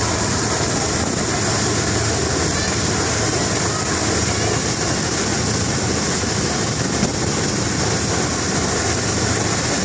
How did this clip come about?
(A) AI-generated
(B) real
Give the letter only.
B